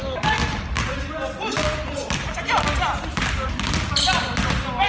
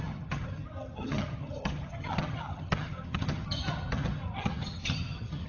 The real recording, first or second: first